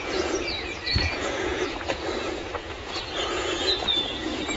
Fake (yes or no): yes